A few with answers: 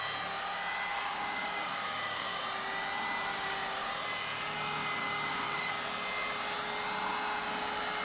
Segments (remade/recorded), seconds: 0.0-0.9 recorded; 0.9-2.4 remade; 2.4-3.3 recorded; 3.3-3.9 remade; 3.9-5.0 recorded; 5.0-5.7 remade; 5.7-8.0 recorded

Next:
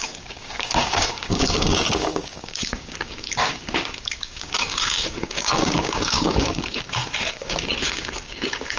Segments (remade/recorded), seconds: 0.0-8.8 remade

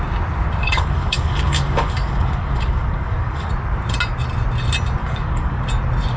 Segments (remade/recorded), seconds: 0.0-0.6 recorded; 0.6-3.5 remade; 3.5-5.0 recorded; 5.0-5.6 remade; 5.6-6.2 recorded